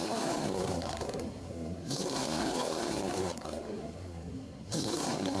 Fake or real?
fake